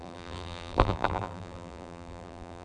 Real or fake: fake